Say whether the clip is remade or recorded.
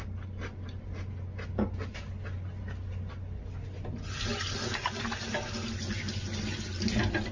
recorded